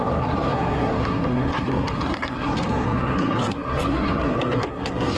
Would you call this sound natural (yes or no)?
no